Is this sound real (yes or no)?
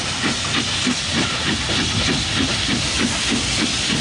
yes